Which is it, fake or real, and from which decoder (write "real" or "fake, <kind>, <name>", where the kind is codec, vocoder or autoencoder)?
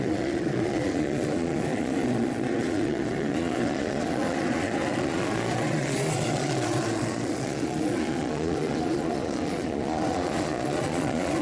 fake, vocoder, Vocos